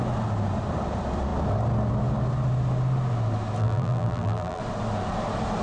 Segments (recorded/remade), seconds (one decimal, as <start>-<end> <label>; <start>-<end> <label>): 0.0-3.6 recorded; 3.6-4.6 remade; 4.6-5.6 recorded